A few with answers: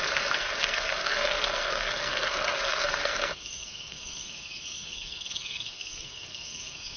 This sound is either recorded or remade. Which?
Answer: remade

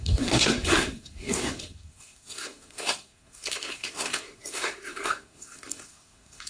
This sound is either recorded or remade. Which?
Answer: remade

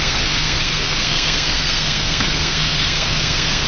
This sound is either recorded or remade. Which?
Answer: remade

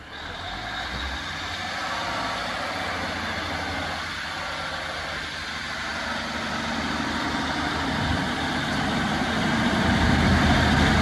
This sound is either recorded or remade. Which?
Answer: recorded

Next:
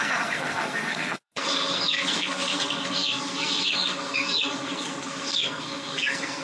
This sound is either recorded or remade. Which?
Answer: remade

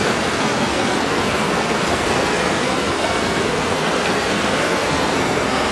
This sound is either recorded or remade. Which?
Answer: remade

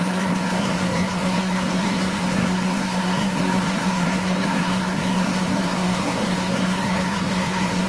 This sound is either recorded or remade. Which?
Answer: remade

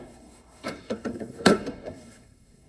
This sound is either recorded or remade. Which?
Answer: remade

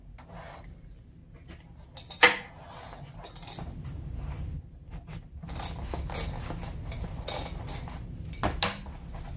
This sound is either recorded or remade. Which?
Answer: recorded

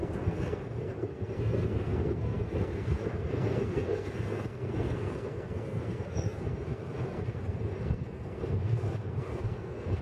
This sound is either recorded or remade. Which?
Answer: remade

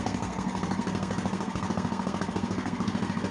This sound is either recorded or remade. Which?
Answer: remade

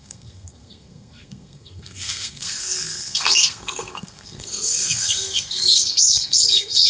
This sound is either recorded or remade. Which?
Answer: remade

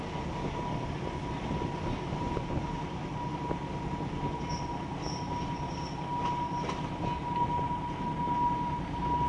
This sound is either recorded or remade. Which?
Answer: recorded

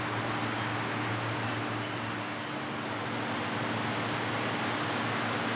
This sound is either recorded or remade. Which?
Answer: recorded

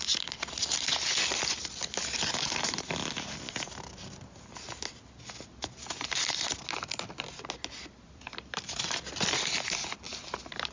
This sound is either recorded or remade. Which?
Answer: recorded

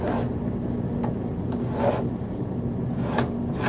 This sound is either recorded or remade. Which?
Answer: recorded